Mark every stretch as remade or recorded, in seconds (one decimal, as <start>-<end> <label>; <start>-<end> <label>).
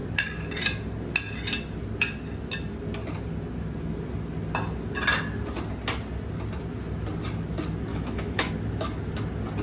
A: 0.0-7.9 recorded; 7.9-8.5 remade; 8.5-9.6 recorded